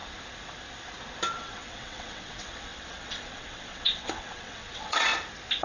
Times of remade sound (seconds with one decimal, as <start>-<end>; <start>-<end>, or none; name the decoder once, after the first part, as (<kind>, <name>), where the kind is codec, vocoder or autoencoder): 1.3-5.1 (vocoder, WaveNeXt)